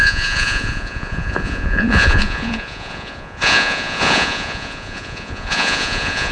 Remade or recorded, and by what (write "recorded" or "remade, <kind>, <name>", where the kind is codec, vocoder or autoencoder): remade, vocoder, Vocos